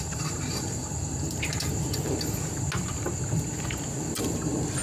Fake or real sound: real